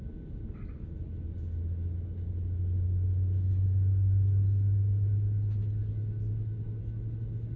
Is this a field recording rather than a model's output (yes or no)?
yes